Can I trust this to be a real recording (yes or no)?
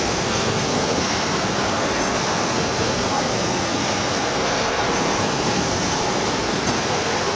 no